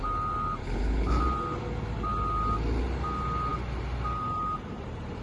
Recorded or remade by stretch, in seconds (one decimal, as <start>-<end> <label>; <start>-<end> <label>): 0.0-0.6 recorded; 0.6-1.2 remade; 1.2-5.2 recorded